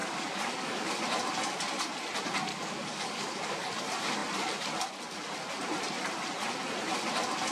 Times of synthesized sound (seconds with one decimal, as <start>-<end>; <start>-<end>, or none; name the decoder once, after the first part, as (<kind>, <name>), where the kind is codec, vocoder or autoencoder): 0.0-0.9 (codec, DAC); 2.5-3.7